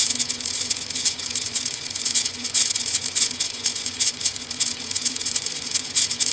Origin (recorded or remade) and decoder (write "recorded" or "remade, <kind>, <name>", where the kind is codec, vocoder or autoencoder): remade, vocoder, Vocos